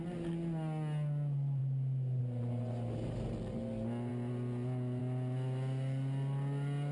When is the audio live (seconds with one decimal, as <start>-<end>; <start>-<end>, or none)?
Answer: 0.0-6.9